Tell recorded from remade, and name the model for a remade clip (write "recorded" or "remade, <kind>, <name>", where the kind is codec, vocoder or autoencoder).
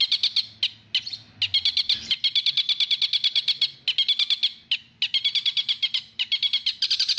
recorded